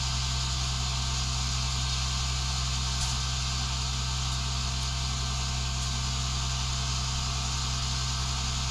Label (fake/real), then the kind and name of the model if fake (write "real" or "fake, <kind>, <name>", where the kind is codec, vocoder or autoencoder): real